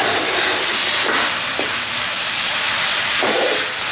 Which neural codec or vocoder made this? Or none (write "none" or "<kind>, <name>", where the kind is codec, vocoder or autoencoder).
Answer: none